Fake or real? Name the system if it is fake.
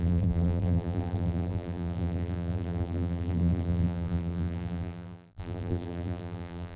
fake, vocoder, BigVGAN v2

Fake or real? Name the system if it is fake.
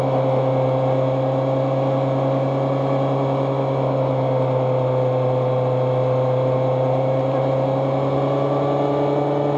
real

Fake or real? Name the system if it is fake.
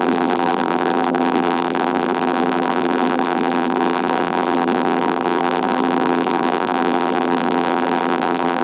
fake, vocoder, BigVGAN v2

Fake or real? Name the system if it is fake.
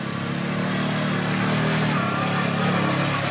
real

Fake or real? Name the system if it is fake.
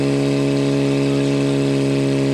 real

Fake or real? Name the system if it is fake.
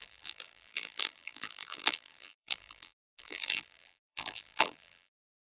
fake, vocoder, BigVGAN v2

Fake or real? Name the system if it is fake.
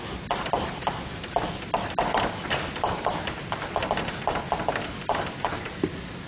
real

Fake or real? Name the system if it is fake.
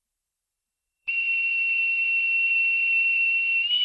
fake, vocoder, BigVGAN v2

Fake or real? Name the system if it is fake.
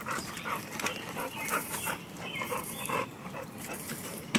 fake, vocoder, BigVGAN v2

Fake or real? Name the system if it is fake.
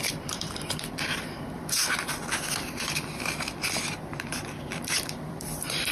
fake, vocoder, BigVGAN v2